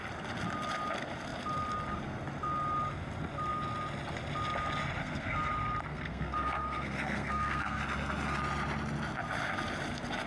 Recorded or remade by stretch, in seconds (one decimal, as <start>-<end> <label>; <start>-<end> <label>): 0.0-5.0 recorded; 5.0-5.5 remade; 5.5-5.9 recorded; 5.9-7.8 remade; 7.8-10.3 recorded